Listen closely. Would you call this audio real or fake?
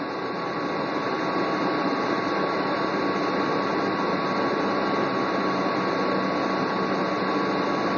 real